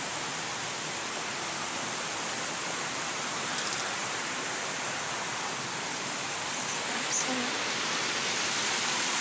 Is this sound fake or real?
real